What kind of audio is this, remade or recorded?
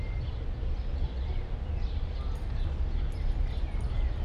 recorded